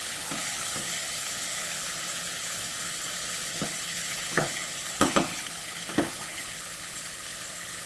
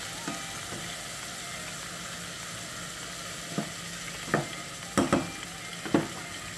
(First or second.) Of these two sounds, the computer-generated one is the first